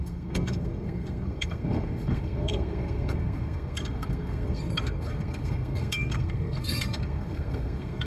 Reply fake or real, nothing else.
fake